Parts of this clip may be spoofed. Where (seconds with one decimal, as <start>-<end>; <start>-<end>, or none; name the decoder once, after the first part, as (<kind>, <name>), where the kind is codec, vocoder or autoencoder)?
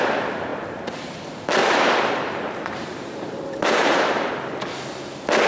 0.5-1.1 (vocoder, BigVGAN v2); 1.6-4.3